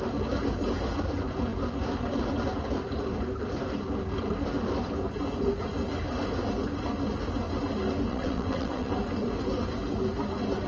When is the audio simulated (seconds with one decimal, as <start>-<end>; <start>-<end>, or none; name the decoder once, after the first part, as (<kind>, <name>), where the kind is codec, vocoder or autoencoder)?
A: 8.1-8.9 (vocoder, WaveNeXt)

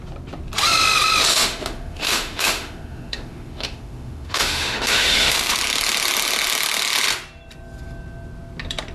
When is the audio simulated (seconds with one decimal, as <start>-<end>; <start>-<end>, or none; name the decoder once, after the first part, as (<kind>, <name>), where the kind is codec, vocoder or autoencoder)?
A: 1.3-5.6 (autoencoder, DAC-VAE)

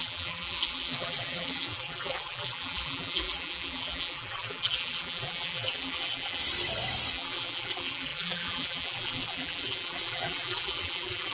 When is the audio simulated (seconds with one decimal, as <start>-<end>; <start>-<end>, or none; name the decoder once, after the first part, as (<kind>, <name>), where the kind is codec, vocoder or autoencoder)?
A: 0.0-6.4 (vocoder, BigVGAN v2); 7.1-11.3

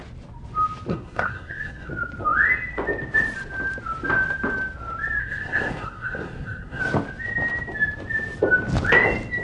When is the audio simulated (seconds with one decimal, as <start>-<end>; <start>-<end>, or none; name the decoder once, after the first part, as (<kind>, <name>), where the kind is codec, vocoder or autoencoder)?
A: 0.9-1.9 (codec, SNAC); 5.2-6.8

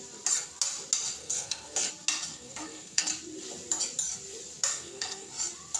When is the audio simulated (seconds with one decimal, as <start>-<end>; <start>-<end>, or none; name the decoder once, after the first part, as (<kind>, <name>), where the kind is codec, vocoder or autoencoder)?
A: 1.2-1.9 (codec, SNAC); 2.3-3.1; 4.7-5.3

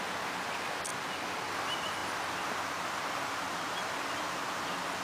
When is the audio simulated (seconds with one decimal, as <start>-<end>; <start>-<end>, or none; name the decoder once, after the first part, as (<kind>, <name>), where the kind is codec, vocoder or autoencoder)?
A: none

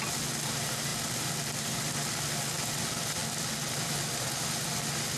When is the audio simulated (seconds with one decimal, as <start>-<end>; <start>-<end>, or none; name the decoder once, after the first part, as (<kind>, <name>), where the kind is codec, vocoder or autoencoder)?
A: none